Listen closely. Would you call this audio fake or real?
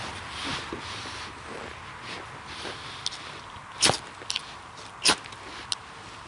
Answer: real